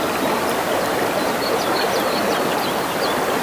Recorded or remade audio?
recorded